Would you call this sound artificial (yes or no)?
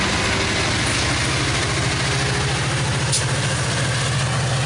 no